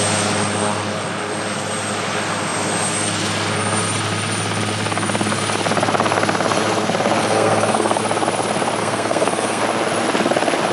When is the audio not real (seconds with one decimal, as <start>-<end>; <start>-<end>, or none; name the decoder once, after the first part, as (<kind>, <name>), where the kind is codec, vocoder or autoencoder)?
7.2-8.0 (codec, SNAC); 8.8-9.6